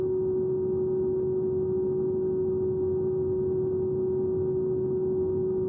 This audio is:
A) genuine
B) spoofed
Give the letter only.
A